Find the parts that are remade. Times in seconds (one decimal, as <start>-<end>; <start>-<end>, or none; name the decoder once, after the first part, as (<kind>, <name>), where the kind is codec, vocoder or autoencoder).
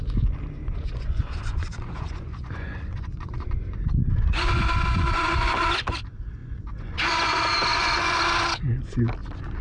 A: 0.6-5.5 (vocoder, Vocos); 6.4-7.3; 7.7-8.2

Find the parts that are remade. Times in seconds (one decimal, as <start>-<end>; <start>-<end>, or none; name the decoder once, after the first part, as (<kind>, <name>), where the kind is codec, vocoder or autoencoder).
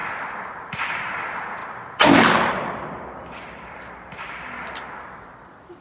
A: none